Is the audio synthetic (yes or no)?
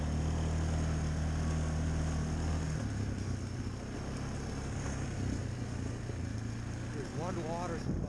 no